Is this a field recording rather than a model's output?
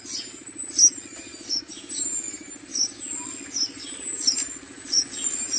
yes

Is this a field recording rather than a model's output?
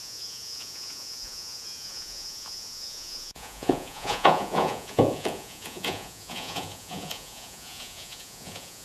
no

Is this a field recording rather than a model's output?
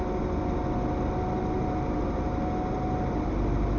yes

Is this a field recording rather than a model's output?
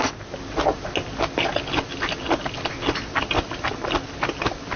yes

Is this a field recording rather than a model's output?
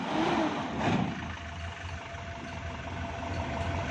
yes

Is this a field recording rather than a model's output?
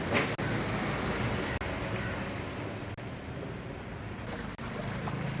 yes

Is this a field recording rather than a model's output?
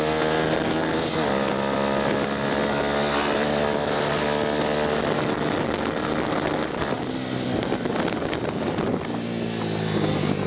yes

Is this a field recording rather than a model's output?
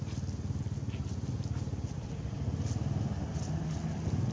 yes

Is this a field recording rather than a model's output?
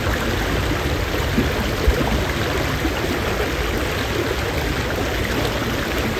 yes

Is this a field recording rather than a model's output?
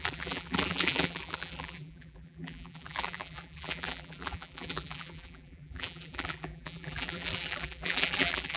no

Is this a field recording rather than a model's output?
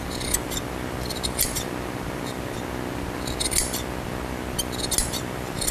yes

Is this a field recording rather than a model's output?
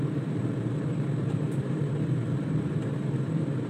no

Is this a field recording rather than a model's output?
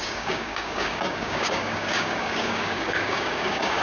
no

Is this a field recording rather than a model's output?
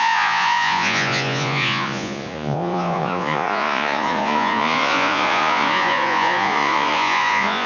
no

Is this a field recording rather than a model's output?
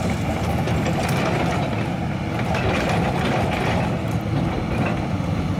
yes